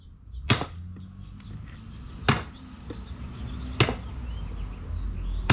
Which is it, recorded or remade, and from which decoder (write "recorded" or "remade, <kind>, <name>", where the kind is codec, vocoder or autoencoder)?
recorded